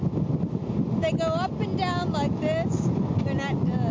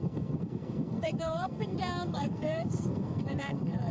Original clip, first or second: first